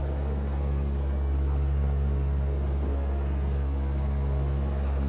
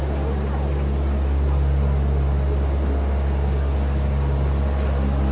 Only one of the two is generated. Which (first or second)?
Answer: first